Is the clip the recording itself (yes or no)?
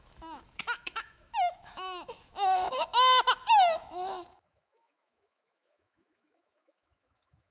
no